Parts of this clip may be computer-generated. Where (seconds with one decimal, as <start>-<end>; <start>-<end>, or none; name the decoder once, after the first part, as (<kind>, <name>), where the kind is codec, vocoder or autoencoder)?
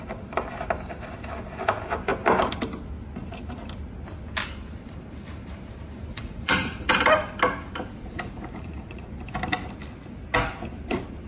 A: 6.1-6.9 (vocoder, Vocos); 8.0-9.1